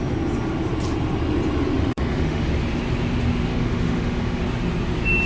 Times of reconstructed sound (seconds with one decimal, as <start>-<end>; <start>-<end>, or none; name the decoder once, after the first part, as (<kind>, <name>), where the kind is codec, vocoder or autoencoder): 1.8-2.5 (autoencoder, DAC-VAE); 3.5-4.4